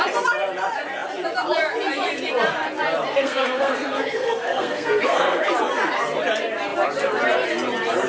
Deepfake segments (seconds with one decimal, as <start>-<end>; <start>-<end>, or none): 3.1-5.5